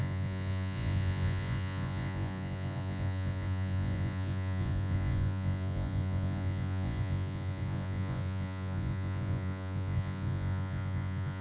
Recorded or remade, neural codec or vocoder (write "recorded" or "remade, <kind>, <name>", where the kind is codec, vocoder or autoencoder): remade, vocoder, Vocos